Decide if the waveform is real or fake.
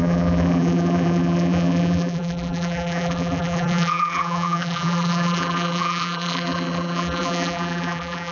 fake